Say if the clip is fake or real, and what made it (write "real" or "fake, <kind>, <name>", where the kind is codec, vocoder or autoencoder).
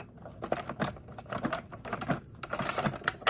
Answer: real